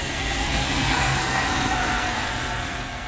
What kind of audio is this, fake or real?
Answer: fake